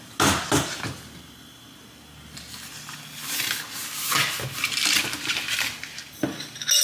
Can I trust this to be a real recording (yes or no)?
yes